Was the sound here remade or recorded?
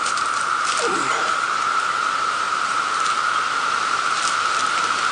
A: recorded